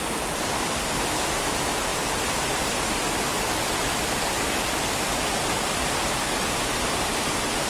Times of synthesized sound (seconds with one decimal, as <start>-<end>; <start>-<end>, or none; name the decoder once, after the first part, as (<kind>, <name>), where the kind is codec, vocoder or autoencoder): none